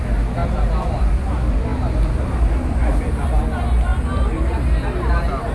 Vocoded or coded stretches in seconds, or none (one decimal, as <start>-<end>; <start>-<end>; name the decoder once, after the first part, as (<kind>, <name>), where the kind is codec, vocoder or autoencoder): none